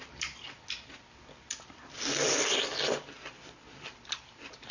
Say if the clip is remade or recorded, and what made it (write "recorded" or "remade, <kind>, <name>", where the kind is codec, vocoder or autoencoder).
recorded